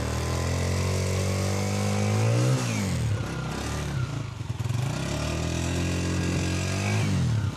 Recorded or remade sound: recorded